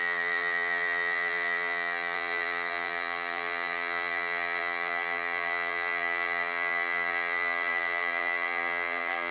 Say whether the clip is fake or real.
fake